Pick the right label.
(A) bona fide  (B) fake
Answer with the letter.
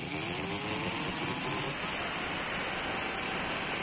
A